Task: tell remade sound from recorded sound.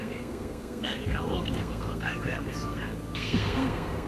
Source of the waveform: remade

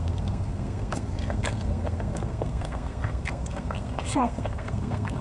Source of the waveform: remade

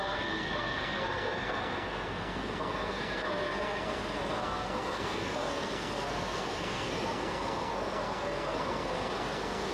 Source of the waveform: remade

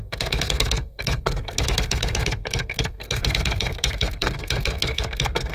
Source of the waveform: remade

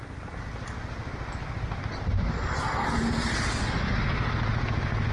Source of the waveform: recorded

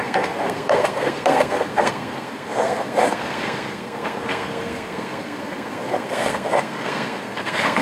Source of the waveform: remade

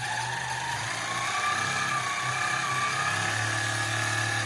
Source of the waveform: recorded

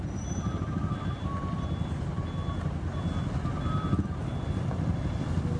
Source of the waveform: recorded